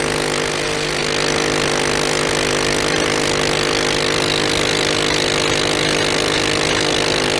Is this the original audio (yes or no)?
yes